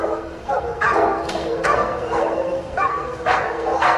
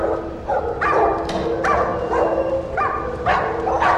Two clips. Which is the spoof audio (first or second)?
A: first